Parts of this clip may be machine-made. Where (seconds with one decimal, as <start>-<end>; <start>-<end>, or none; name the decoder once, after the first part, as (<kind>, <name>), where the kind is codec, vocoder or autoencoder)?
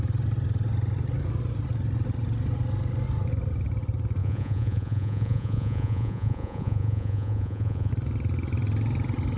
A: 4.2-7.9 (vocoder, Vocos)